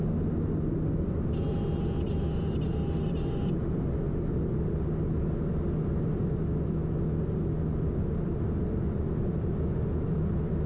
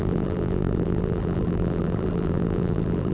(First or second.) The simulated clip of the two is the second